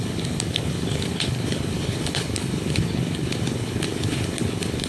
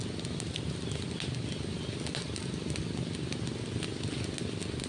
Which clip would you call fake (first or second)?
first